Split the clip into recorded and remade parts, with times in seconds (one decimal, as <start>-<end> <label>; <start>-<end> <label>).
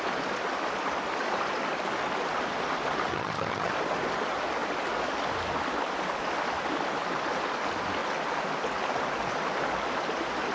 0.0-3.1 recorded; 3.1-3.7 remade; 3.7-10.5 recorded